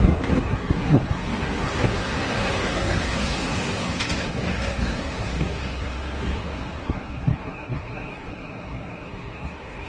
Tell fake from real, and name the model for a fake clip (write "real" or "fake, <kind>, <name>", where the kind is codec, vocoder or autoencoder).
fake, codec, SNAC